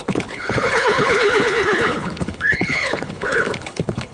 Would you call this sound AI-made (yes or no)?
yes